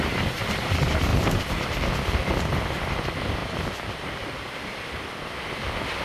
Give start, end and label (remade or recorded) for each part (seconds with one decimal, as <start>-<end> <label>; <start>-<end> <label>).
0.0-1.1 recorded; 1.1-1.9 remade; 1.9-3.4 recorded; 3.4-4.8 remade; 4.8-6.0 recorded